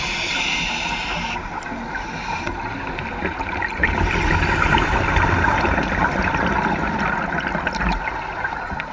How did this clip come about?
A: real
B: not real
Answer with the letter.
A